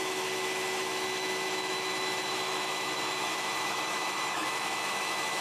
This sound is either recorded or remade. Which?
remade